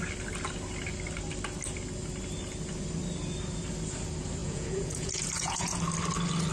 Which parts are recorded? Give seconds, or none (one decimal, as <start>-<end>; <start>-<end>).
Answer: 0.0-4.4; 5.8-6.5